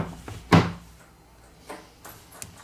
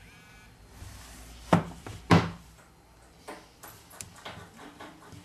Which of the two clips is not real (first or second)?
second